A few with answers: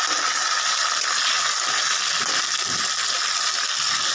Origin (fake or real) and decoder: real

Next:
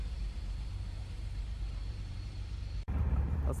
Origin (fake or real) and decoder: fake, vocoder, BigVGAN v2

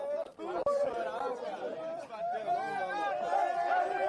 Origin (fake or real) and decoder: real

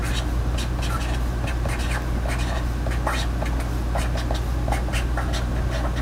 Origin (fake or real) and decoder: real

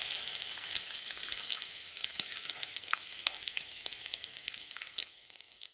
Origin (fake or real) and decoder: fake, codec, SNAC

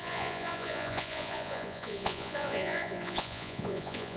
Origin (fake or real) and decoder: fake, vocoder, Vocos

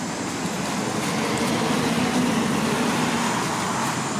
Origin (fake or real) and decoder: real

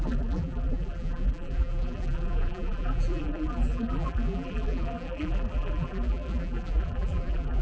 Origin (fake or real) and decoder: fake, vocoder, BigVGAN v2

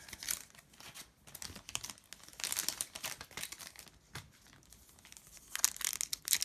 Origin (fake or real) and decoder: real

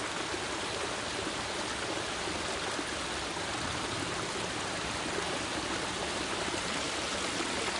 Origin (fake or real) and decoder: real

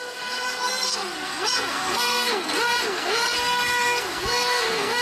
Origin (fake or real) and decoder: fake, codec, SNAC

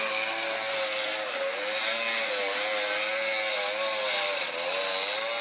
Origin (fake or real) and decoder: real